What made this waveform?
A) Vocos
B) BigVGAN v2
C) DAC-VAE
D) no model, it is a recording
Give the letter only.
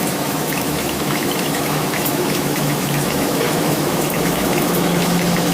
C